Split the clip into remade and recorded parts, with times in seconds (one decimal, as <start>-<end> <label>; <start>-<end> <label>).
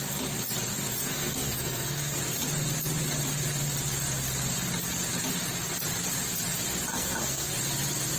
0.0-1.0 recorded; 1.0-2.2 remade; 2.2-6.9 recorded; 6.9-7.5 remade; 7.5-8.2 recorded